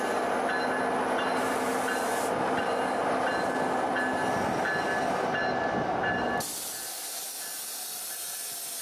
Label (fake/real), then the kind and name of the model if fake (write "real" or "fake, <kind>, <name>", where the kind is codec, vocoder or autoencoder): real